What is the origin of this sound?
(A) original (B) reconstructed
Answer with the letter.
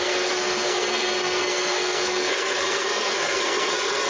B